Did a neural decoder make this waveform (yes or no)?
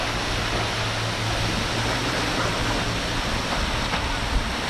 no